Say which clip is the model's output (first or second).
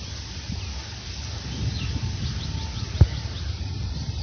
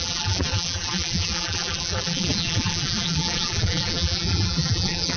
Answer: second